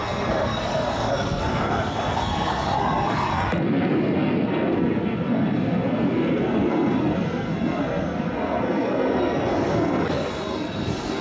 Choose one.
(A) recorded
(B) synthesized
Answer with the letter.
B